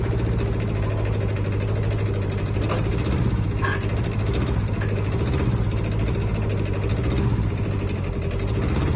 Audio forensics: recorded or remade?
recorded